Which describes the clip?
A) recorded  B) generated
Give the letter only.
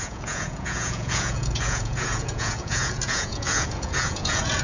B